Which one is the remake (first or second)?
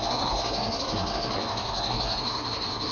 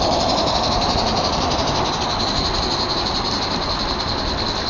first